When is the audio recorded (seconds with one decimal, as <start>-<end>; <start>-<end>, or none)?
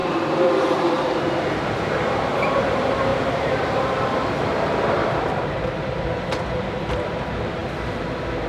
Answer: 0.0-0.6; 7.6-8.5